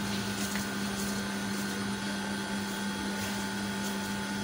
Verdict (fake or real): real